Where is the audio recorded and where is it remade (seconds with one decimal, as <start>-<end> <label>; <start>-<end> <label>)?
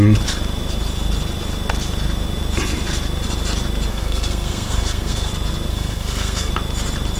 0.0-3.9 recorded; 3.9-5.3 remade; 5.3-5.7 recorded; 5.7-6.5 remade; 6.5-7.2 recorded